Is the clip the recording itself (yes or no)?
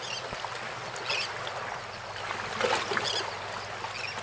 yes